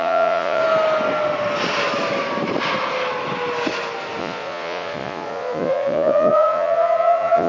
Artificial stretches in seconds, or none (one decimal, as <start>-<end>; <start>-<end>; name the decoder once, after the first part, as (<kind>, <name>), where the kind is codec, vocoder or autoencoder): 0.0-0.6 (vocoder, Vocos); 4.2-7.5